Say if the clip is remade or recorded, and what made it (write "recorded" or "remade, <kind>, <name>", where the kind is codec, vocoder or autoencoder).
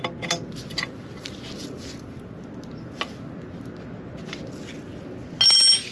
recorded